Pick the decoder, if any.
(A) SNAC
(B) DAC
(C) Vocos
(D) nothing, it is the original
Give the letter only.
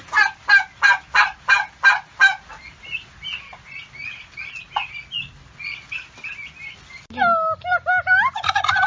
D